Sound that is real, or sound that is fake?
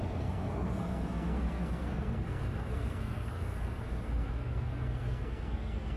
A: fake